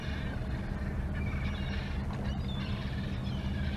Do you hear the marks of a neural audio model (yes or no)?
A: no